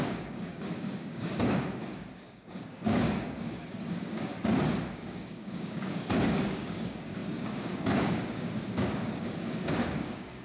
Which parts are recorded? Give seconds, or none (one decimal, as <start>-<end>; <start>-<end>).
4.3-4.9